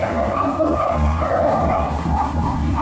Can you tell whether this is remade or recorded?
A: remade